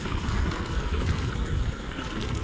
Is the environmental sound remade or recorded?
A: remade